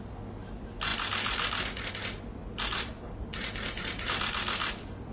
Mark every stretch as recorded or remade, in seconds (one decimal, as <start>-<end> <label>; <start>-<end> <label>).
0.0-2.4 recorded; 2.4-2.9 remade; 2.9-3.3 recorded; 3.3-4.2 remade; 4.2-5.1 recorded